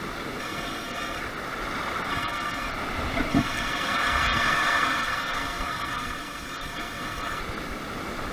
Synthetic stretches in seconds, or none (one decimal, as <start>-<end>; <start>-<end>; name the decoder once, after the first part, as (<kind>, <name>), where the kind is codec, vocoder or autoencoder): 0.4-1.2 (codec, SNAC); 2.1-2.7; 3.3-7.4